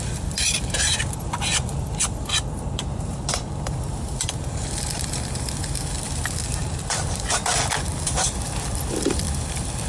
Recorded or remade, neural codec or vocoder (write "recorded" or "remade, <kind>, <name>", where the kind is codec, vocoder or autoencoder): remade, vocoder, BigVGAN v2